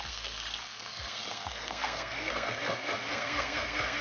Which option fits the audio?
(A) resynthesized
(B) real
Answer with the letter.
A